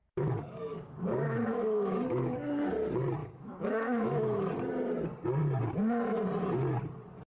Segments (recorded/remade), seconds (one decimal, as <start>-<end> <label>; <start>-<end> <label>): 0.0-2.7 remade; 2.7-3.2 recorded; 3.2-4.5 remade; 4.5-7.3 recorded

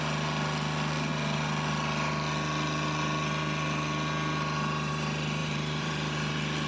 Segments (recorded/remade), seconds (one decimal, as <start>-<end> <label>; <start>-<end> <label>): 0.0-5.4 recorded; 5.4-6.3 remade; 6.3-6.7 recorded

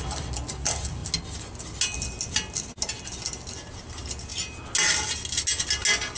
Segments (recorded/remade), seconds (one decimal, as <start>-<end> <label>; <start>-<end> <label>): 0.0-6.2 recorded

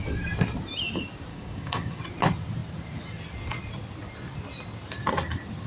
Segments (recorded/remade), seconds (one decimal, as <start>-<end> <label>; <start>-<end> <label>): 0.0-1.3 recorded; 1.3-2.0 remade; 2.0-5.7 recorded

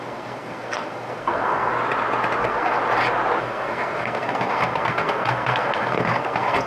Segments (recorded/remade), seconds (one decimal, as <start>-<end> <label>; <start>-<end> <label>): 0.0-1.7 remade; 1.7-2.4 recorded; 2.4-2.8 remade; 2.8-3.4 recorded; 3.4-6.7 remade

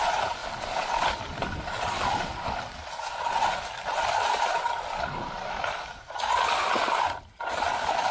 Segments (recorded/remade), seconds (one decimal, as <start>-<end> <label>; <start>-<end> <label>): 0.0-8.1 recorded

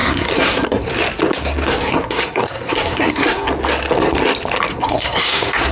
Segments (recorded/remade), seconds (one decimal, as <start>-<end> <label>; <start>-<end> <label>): 0.0-0.9 remade; 0.9-1.7 recorded; 1.7-3.5 remade; 3.5-4.7 recorded; 4.7-5.7 remade

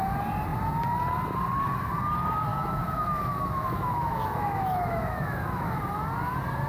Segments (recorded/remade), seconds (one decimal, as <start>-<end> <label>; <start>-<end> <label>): 0.0-2.5 recorded; 2.5-5.8 remade; 5.8-6.7 recorded